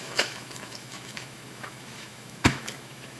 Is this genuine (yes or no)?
no